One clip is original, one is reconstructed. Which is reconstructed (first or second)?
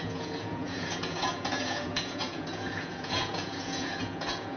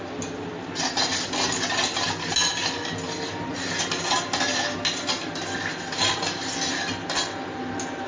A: first